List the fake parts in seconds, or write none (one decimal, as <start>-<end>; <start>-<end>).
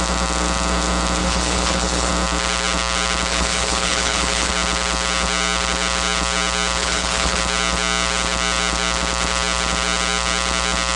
1.2-2.1; 3.3-4.5; 6.8-7.4